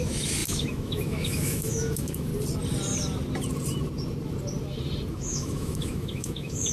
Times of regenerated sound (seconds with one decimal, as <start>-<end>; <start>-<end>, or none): 0.0-2.3; 5.1-6.7

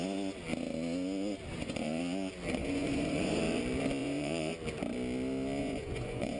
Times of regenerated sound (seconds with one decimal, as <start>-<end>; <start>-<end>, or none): 1.5-2.0; 2.6-3.4; 4.0-4.5; 5.6-6.4

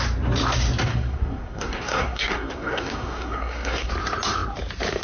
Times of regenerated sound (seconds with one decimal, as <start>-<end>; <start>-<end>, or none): 0.9-3.9

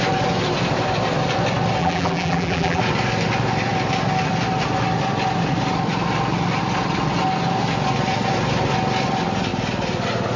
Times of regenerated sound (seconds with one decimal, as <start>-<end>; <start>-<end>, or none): 1.8-2.8